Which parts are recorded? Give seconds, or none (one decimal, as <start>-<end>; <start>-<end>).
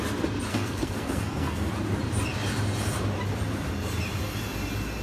0.0-0.5; 1.7-5.0